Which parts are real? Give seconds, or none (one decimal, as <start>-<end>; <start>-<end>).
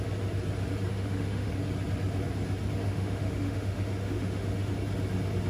0.0-0.9; 1.5-2.8; 4.7-5.5